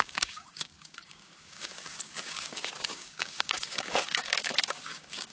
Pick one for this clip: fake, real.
fake